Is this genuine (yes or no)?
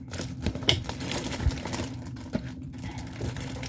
no